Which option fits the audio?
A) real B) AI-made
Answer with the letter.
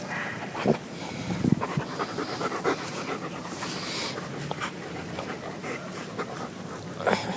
A